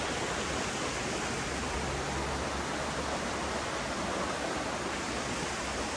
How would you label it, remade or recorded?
recorded